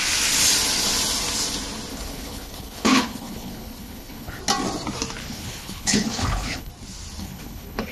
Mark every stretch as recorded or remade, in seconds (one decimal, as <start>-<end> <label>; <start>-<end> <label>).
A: 0.0-1.9 recorded; 1.9-4.4 remade; 4.4-5.2 recorded; 5.2-6.7 remade; 6.7-7.2 recorded; 7.2-7.9 remade